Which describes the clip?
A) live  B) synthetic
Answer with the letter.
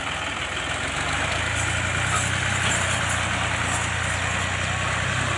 A